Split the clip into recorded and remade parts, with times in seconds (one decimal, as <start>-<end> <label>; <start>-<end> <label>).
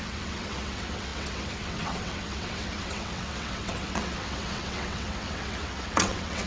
0.0-6.5 remade